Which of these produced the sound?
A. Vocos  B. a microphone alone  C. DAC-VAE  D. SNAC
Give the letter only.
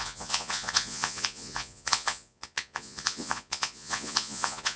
A